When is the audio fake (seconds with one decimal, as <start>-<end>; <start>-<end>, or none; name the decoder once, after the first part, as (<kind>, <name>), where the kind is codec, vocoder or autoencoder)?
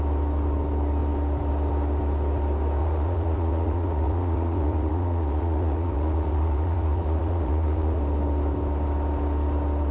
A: 2.8-8.0 (vocoder, Vocos)